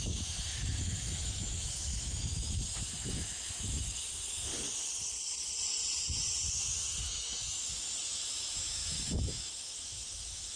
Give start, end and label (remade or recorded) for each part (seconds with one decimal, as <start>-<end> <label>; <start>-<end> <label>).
0.0-4.5 remade; 4.5-6.5 recorded; 6.5-10.6 remade